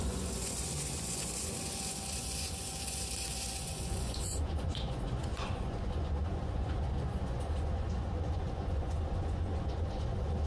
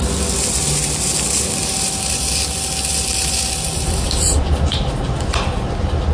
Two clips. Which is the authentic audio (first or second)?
second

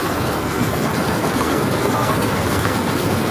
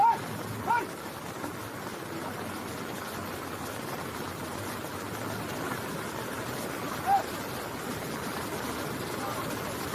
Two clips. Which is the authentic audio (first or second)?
second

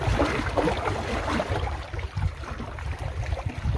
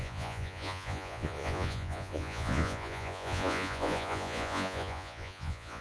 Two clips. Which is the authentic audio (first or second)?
first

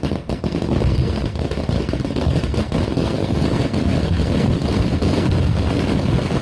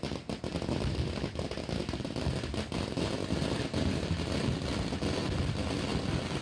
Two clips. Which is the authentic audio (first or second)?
second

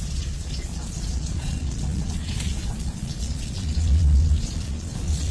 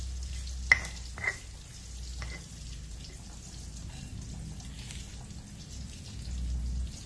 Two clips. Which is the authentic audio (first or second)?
second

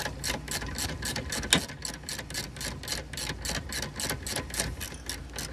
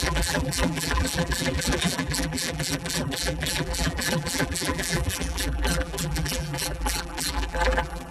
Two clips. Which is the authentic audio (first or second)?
first